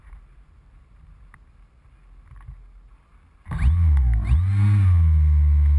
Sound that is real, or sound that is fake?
real